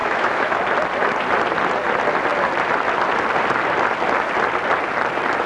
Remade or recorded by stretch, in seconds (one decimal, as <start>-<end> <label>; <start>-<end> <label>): 0.0-0.6 remade; 0.6-5.5 recorded